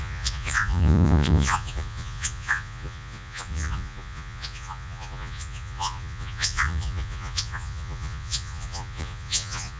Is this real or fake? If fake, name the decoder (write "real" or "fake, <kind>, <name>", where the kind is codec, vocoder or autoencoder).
fake, vocoder, Vocos